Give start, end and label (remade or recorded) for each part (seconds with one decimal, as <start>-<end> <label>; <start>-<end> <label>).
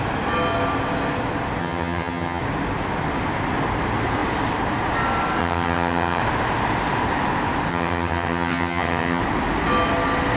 0.0-1.6 recorded; 1.6-2.4 remade; 2.4-5.4 recorded; 5.4-6.2 remade; 6.2-7.7 recorded; 7.7-9.2 remade; 9.2-10.4 recorded